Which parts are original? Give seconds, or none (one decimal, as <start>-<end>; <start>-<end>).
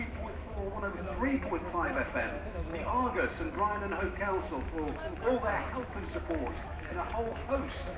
2.7-4.0